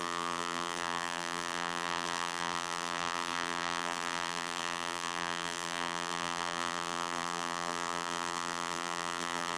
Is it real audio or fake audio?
fake